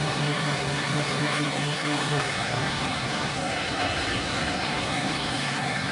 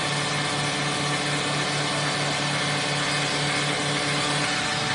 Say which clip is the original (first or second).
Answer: second